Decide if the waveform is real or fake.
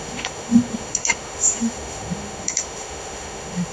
fake